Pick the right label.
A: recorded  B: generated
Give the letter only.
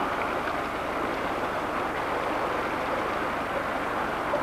A